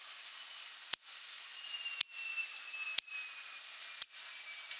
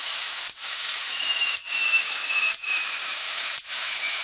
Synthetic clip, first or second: second